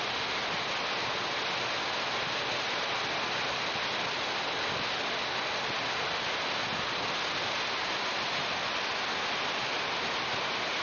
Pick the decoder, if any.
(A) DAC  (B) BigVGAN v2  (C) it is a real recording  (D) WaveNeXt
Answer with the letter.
C